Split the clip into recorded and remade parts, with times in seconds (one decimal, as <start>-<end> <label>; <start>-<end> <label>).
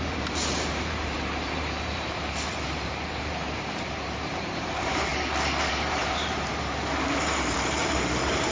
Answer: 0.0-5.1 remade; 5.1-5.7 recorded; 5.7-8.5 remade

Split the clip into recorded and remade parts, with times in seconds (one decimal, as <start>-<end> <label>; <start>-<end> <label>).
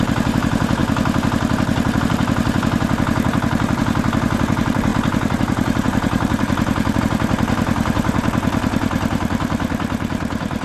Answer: 0.0-0.8 remade; 0.8-2.0 recorded; 2.0-10.6 remade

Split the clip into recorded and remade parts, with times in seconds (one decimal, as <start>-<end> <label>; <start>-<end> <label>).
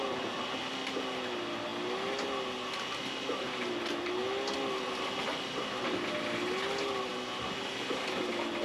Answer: 0.0-8.6 recorded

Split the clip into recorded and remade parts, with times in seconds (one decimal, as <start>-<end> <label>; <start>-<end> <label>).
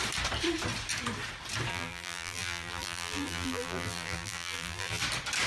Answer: 0.0-1.7 recorded; 1.7-5.0 remade; 5.0-5.5 recorded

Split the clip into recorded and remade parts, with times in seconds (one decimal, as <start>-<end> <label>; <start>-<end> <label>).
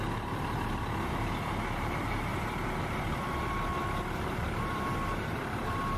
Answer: 0.0-2.3 recorded; 2.3-6.0 remade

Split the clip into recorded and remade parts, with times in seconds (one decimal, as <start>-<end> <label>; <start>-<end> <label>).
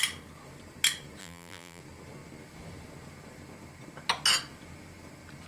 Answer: 0.0-1.2 recorded; 1.2-1.8 remade; 1.8-5.5 recorded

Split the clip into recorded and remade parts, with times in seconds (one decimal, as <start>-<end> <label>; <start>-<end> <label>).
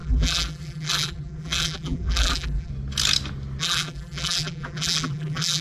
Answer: 0.0-2.7 remade; 2.7-3.6 recorded; 3.6-5.6 remade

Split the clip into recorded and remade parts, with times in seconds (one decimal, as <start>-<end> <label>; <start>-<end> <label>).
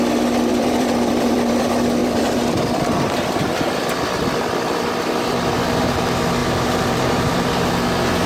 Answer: 0.0-0.5 recorded; 0.5-1.6 remade; 1.6-2.0 recorded; 2.0-2.6 remade; 2.6-6.4 recorded; 6.4-7.7 remade; 7.7-8.3 recorded